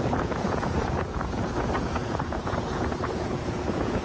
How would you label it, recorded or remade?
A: remade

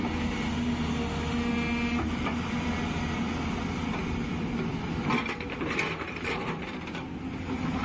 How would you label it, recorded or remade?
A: recorded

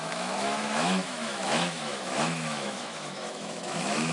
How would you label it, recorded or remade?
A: remade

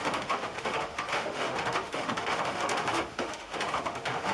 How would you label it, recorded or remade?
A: remade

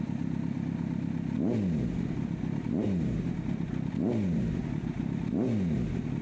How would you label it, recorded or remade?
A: recorded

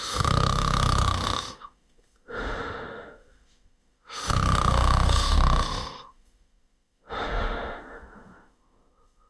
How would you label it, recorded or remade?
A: remade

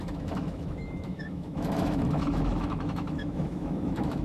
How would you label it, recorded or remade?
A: remade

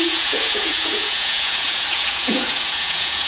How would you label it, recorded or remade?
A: remade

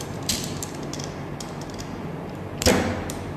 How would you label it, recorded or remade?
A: remade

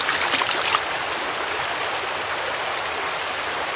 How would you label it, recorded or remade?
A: recorded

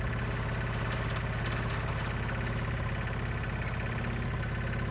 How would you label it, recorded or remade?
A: recorded